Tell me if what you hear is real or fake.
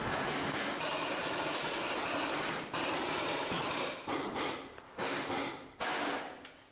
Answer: real